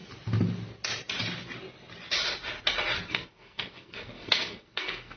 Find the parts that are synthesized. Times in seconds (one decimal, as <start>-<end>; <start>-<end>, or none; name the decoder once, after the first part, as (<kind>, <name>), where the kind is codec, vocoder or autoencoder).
3.1-5.2 (codec, SNAC)